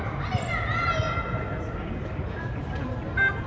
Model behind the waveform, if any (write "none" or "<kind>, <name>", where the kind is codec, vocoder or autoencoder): none